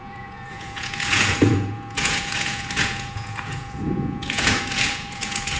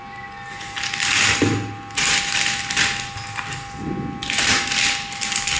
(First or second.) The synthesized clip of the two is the first